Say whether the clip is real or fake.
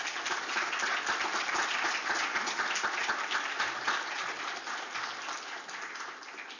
real